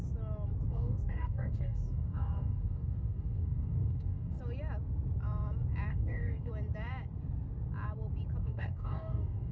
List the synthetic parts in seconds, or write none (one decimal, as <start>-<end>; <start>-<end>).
0.7-4.4; 5.9-6.5; 8.4-9.5